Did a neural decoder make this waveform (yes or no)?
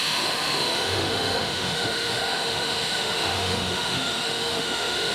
yes